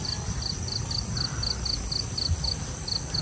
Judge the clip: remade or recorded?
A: recorded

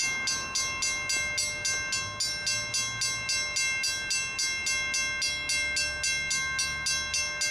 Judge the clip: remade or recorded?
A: recorded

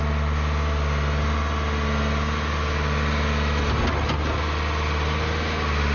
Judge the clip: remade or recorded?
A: recorded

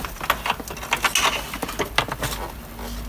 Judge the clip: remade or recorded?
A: recorded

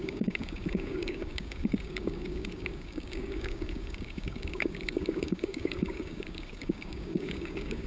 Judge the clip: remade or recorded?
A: remade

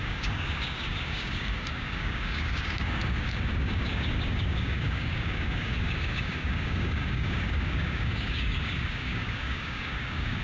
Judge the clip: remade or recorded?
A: remade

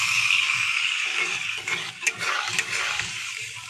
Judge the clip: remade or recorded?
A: remade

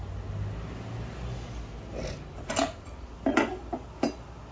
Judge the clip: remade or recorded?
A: recorded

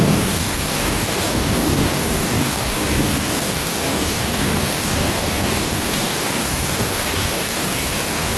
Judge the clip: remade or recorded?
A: remade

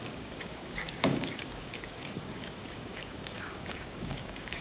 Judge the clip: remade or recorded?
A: remade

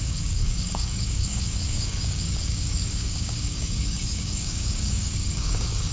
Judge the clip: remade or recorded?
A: remade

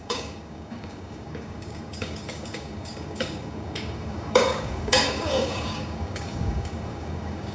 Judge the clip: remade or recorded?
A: remade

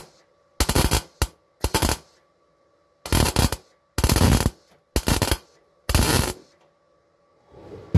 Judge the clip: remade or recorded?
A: recorded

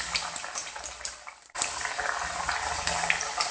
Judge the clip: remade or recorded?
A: recorded